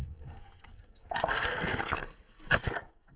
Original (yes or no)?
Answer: no